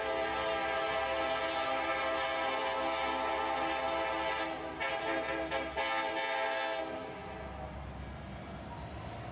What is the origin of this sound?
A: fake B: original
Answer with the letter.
B